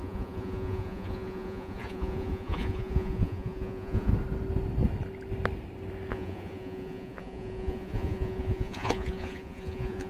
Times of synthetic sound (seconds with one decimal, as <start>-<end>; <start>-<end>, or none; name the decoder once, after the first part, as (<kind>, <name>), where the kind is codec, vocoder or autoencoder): 0.0-4.1 (vocoder, Vocos); 6.1-10.1